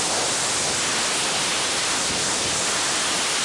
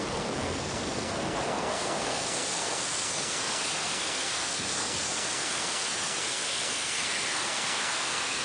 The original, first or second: first